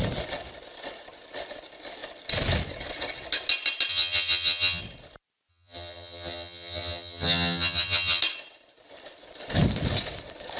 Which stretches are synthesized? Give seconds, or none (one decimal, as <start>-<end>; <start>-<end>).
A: 3.9-4.8; 5.5-8.2